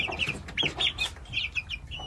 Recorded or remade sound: recorded